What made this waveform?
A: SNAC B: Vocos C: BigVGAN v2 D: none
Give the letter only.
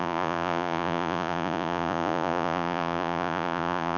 B